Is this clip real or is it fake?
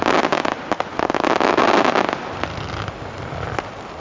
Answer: real